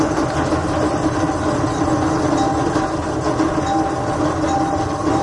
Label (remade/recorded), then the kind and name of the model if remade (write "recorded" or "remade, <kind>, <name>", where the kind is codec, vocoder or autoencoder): recorded